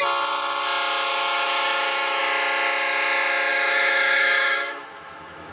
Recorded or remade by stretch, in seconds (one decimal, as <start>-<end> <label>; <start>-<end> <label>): 0.0-1.1 recorded; 1.1-2.2 remade; 2.2-3.5 recorded; 3.5-5.5 remade